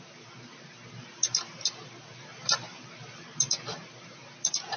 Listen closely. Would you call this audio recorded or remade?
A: remade